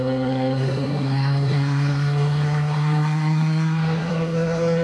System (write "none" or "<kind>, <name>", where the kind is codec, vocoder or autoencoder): codec, SNAC